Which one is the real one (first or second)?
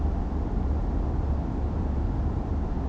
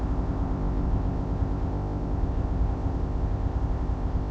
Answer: first